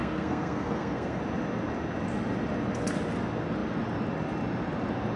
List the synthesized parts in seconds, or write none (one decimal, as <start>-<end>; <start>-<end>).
0.0-1.2